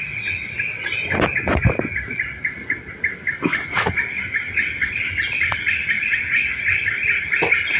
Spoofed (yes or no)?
no